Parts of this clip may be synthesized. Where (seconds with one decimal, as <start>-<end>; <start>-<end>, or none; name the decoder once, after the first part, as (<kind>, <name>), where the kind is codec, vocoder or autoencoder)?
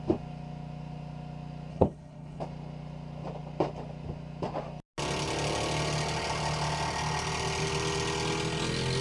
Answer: 1.7-2.4 (codec, HILCodec)